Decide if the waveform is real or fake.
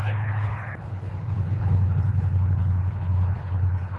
fake